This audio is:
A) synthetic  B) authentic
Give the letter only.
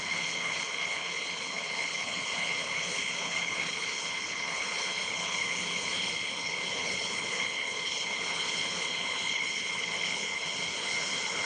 A